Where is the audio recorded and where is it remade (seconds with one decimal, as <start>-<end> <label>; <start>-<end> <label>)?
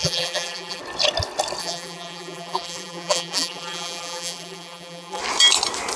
0.0-0.8 remade; 0.8-1.6 recorded; 1.6-5.2 remade; 5.2-6.0 recorded